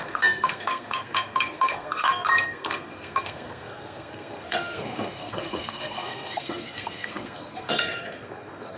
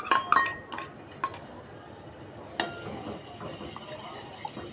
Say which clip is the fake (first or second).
first